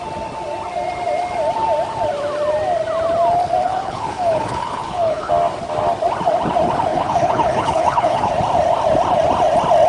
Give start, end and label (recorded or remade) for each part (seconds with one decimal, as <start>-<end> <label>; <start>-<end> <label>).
0.0-3.6 recorded; 3.6-5.3 remade; 5.3-6.9 recorded; 6.9-8.3 remade; 8.3-9.9 recorded